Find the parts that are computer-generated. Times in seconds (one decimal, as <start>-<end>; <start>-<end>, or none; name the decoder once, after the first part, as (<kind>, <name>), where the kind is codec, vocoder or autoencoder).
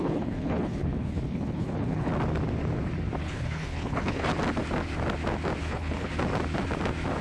0.0-2.1 (codec, HILCodec); 3.2-4.3; 5.6-6.1